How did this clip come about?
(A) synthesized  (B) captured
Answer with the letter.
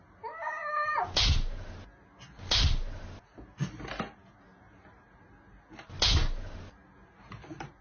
B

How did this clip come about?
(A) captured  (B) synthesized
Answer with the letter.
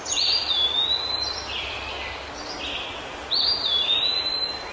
A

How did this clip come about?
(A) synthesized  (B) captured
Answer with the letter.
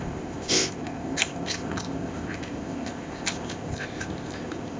A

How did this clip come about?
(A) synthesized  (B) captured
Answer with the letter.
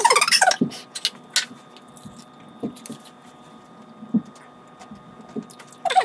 B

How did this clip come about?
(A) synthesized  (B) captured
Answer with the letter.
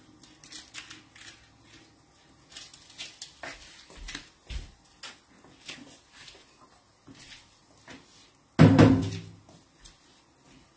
B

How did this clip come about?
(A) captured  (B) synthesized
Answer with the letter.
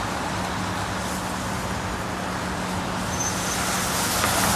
A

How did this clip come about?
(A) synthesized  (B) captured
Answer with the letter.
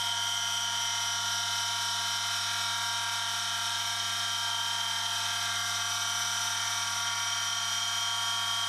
B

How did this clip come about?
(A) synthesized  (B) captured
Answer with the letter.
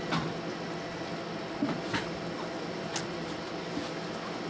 B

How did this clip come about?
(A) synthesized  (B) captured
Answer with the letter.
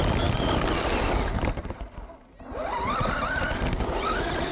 B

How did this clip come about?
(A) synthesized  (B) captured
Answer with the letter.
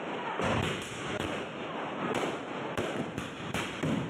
B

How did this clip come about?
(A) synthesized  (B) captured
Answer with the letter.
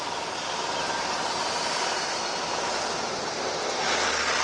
B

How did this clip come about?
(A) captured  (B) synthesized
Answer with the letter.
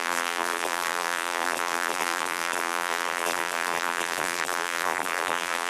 B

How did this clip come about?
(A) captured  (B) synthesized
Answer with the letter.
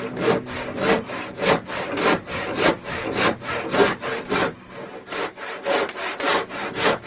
A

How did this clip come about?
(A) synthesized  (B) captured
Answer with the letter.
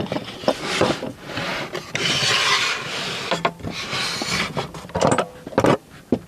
B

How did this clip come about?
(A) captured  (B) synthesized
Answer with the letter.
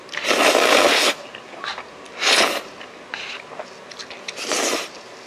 A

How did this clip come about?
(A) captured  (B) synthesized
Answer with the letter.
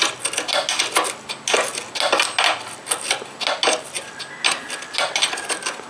A